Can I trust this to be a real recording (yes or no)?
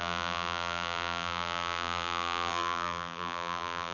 no